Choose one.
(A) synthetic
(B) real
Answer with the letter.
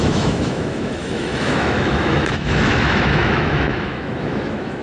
A